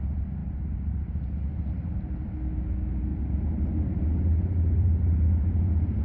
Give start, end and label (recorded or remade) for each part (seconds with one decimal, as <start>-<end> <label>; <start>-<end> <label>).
0.0-0.4 recorded; 0.4-1.7 remade; 1.7-3.1 recorded; 3.1-6.0 remade